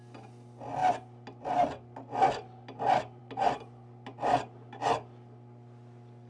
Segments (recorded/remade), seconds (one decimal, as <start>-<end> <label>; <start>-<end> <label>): 0.0-6.3 recorded

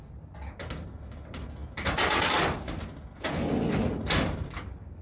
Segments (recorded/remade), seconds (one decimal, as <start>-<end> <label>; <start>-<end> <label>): 0.0-1.6 recorded; 1.6-3.0 remade; 3.0-5.0 recorded

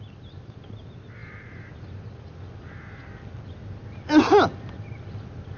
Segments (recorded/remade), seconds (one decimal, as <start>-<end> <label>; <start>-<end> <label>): 0.0-5.6 recorded